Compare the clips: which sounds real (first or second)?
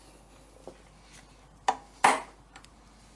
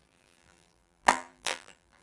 first